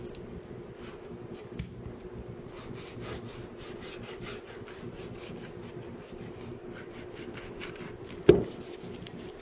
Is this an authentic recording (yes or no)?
yes